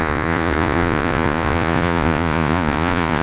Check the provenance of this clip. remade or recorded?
remade